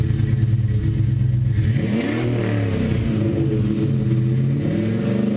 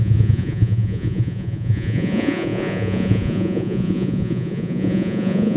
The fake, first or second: second